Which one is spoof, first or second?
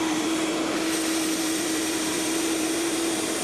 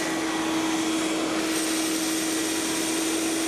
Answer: first